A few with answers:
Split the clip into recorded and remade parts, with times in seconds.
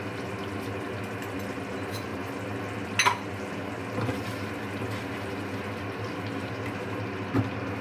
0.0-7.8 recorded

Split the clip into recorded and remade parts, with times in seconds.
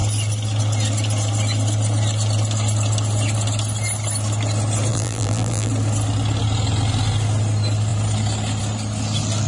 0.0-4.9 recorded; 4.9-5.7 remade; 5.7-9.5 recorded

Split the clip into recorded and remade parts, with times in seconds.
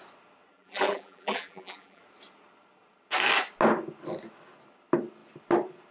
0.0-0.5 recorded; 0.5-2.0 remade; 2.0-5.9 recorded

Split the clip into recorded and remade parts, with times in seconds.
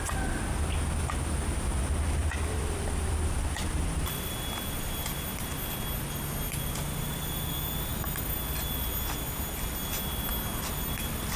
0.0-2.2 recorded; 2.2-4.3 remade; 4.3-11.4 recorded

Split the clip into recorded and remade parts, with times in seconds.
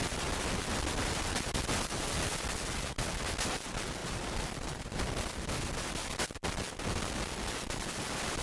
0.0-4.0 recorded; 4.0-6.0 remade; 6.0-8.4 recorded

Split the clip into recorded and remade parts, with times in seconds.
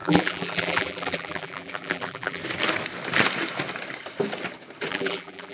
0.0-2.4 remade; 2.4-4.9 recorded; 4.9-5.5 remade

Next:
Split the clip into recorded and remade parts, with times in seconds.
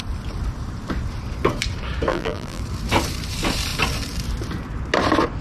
0.0-2.1 recorded; 2.1-2.6 remade; 2.6-5.4 recorded